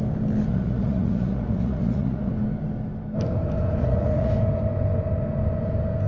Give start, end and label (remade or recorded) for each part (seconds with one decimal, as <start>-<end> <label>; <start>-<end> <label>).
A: 0.0-0.5 recorded; 0.5-2.3 remade; 2.3-3.8 recorded; 3.8-4.3 remade; 4.3-6.1 recorded